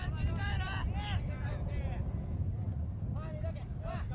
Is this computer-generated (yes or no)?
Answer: no